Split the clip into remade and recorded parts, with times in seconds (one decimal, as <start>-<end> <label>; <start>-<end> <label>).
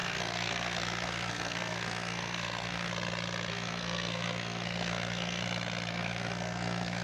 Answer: 0.0-2.9 remade; 2.9-3.5 recorded; 3.5-5.4 remade; 5.4-5.9 recorded; 5.9-7.0 remade